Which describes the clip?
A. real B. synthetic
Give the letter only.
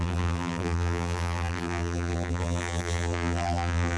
B